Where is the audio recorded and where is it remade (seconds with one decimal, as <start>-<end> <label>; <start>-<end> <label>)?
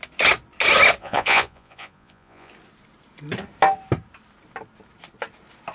0.0-1.0 recorded; 1.0-2.5 remade; 2.5-5.7 recorded